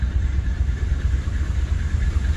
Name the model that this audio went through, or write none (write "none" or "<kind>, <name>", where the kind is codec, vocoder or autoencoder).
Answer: vocoder, BigVGAN v2